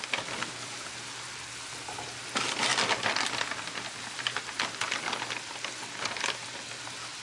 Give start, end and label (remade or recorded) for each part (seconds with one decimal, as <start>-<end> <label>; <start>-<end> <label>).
0.0-7.2 recorded